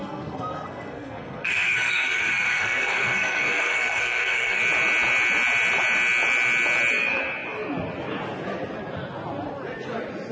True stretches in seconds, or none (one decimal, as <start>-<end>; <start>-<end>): 4.6-10.3

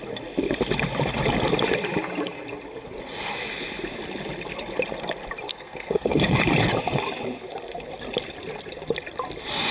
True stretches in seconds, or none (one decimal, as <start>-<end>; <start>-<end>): 0.0-5.5; 6.4-9.7

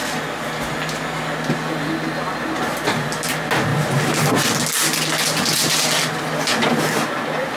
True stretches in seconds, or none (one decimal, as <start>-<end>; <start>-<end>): 0.0-7.6

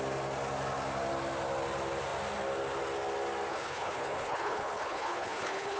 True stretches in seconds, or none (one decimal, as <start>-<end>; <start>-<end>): 0.0-3.5

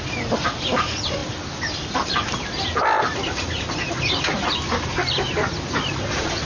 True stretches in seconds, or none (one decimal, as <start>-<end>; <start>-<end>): 0.0-6.4